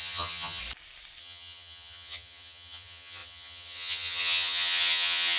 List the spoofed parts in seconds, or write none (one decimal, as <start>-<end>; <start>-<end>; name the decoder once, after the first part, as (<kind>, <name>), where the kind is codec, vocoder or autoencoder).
0.0-0.6 (vocoder, HiFi-GAN); 1.2-5.4